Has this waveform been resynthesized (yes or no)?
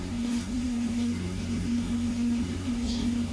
yes